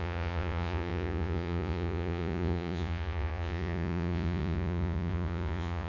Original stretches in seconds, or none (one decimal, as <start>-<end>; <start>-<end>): none